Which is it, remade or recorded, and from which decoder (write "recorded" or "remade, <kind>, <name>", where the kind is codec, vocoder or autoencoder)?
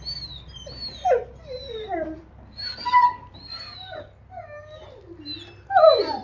recorded